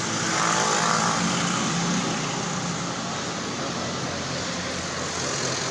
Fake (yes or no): no